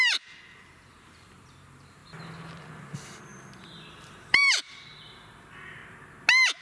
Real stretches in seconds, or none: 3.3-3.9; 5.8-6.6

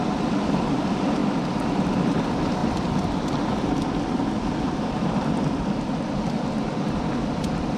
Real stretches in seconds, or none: 1.2-1.8

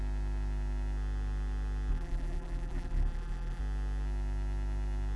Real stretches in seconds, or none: 0.0-1.9; 3.6-5.2